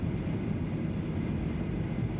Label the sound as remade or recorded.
recorded